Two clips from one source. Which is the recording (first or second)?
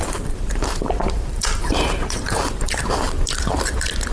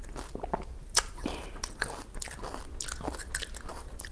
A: second